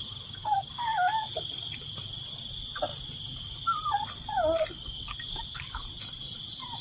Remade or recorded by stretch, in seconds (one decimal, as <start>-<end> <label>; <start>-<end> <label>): 0.0-6.8 recorded